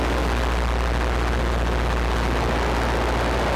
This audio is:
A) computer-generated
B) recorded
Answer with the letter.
B